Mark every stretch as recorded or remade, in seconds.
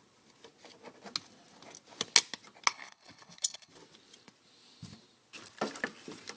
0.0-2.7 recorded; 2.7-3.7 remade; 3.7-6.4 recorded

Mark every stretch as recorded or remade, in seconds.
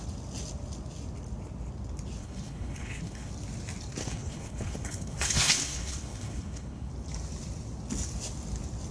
0.0-2.2 recorded; 2.2-3.3 remade; 3.3-4.0 recorded; 4.0-6.9 remade; 6.9-8.9 recorded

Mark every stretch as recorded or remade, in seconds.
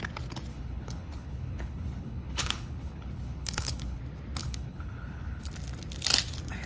0.0-0.5 recorded; 0.5-4.0 remade; 4.0-4.4 recorded; 4.4-5.5 remade; 5.5-6.7 recorded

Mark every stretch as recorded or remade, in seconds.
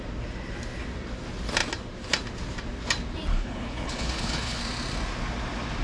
0.0-3.3 recorded; 3.3-4.6 remade; 4.6-5.8 recorded